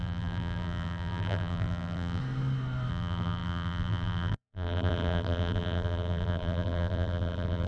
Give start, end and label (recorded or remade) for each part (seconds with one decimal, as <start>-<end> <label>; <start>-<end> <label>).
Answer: 0.0-2.2 remade; 2.2-2.9 recorded; 2.9-7.7 remade